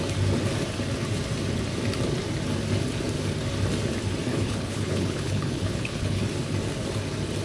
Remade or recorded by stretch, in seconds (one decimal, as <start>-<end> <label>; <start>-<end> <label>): 0.0-4.3 recorded; 4.3-6.2 remade; 6.2-7.4 recorded